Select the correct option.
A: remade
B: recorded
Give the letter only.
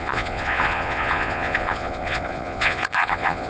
A